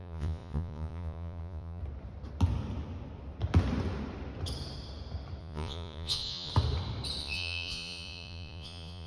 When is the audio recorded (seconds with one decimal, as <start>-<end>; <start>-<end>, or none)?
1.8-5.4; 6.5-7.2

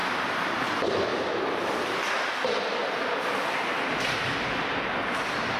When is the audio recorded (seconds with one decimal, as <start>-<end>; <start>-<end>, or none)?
0.0-1.1; 2.0-2.8

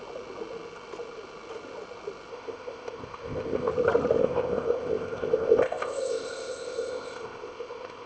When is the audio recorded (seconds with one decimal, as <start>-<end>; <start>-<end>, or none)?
0.0-2.3; 3.7-4.2

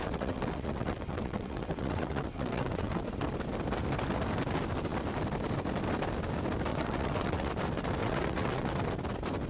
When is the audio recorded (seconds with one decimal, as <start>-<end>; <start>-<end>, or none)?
3.0-6.7; 7.5-8.0; 8.7-9.5